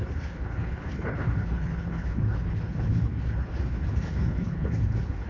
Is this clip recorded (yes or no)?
no